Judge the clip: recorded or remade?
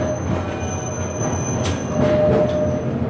recorded